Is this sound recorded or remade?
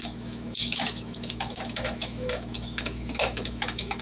remade